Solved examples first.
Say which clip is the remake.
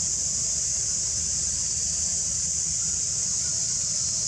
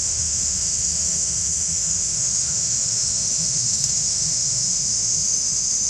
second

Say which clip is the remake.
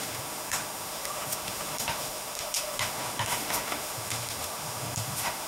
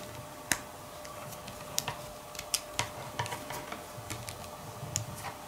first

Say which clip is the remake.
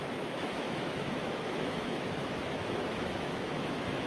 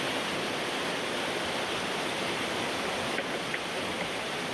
first